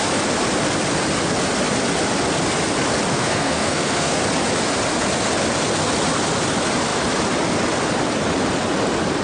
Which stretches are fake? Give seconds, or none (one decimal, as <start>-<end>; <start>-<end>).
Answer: 3.1-4.2